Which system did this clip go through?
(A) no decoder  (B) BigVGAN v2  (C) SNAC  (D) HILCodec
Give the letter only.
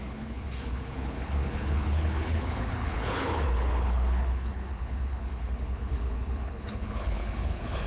D